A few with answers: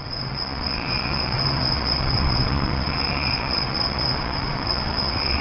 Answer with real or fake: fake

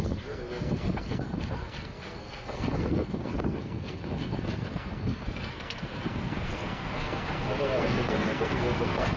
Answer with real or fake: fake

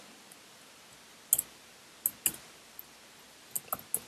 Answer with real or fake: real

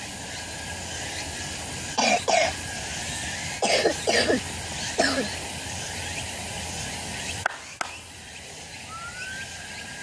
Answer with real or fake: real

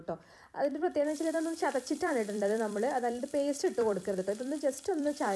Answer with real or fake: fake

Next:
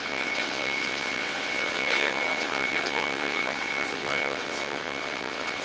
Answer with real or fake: fake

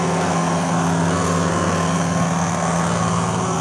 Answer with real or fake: fake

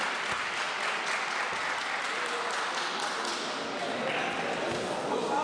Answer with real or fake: real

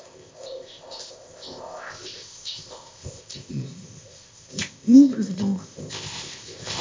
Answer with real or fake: fake